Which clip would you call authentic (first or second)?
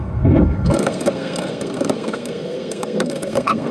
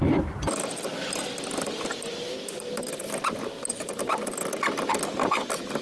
second